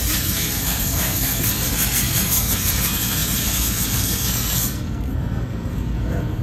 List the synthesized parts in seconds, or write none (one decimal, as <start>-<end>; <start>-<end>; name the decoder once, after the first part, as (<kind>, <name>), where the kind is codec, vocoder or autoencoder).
0.0-6.4 (codec, SNAC)